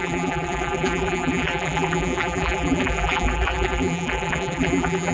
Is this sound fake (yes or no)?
yes